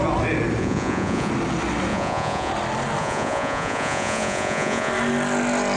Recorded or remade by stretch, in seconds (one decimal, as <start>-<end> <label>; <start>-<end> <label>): 0.0-0.6 recorded; 0.6-1.3 remade; 1.3-1.9 recorded; 1.9-2.5 remade; 2.5-3.0 recorded; 3.0-4.9 remade; 4.9-5.8 recorded